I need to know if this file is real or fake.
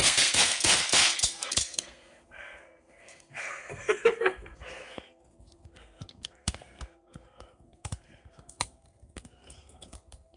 fake